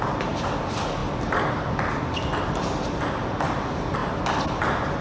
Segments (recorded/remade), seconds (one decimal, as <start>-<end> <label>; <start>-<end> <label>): 0.0-5.0 recorded